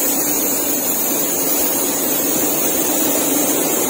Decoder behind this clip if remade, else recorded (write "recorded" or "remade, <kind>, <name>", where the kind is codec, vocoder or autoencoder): remade, vocoder, BigVGAN v2